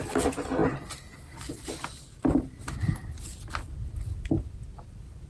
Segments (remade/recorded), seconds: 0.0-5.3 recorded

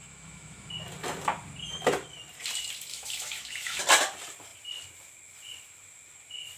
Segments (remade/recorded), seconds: 0.0-0.7 remade; 0.7-2.9 recorded; 2.9-3.8 remade; 3.8-6.6 recorded

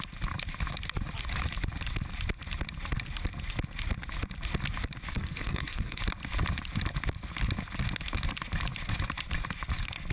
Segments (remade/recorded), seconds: 0.0-5.1 recorded; 5.1-6.0 remade; 6.0-10.1 recorded

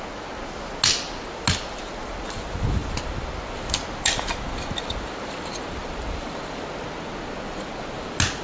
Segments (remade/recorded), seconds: 0.0-8.4 recorded